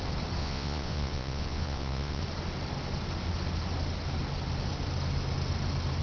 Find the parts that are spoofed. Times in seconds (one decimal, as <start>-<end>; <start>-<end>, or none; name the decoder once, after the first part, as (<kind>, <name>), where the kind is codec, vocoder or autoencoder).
0.4-2.2 (vocoder, Vocos)